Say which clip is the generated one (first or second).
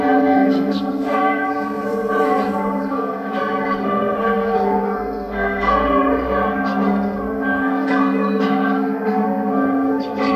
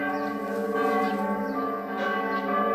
first